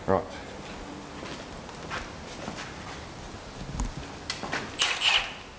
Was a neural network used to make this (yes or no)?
no